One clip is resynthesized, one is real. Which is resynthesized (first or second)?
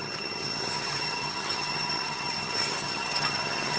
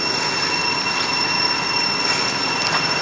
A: first